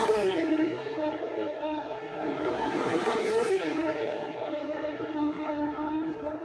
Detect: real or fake fake